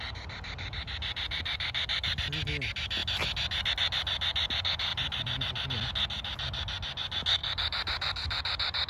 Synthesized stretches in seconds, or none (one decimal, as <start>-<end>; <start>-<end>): 4.9-5.8; 7.4-8.9